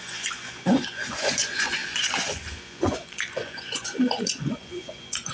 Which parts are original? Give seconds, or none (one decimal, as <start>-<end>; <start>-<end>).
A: none